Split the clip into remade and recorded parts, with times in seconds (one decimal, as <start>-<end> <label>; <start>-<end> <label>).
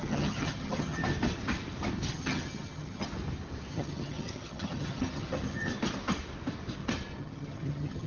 0.0-1.0 remade; 1.0-2.1 recorded; 2.1-3.1 remade; 3.1-3.7 recorded; 3.7-5.7 remade; 5.7-7.2 recorded; 7.2-8.1 remade